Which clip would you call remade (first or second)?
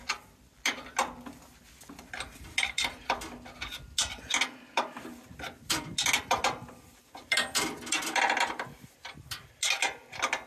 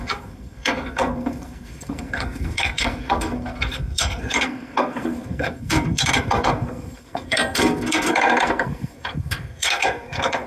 second